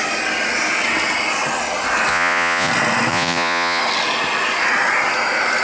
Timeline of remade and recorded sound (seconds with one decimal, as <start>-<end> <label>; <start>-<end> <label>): 0.0-2.1 recorded; 2.1-2.7 remade; 2.7-3.1 recorded; 3.1-3.8 remade; 3.8-5.6 recorded